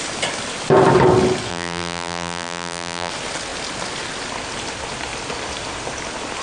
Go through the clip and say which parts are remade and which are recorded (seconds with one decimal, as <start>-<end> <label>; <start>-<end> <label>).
0.0-1.5 recorded; 1.5-3.1 remade; 3.1-6.4 recorded